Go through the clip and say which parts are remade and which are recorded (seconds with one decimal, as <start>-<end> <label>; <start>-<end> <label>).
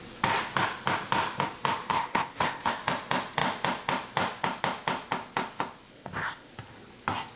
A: 0.0-1.9 recorded; 1.9-2.8 remade; 2.8-5.9 recorded; 5.9-6.5 remade; 6.5-7.4 recorded